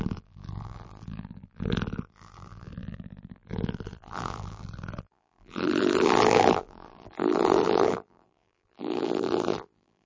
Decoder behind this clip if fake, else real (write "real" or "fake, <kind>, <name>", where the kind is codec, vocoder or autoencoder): fake, vocoder, BigVGAN v2